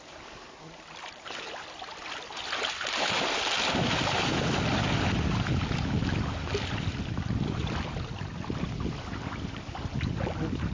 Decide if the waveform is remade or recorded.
recorded